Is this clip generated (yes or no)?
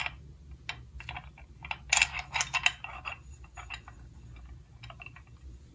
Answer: no